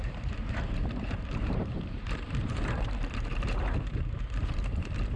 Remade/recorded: remade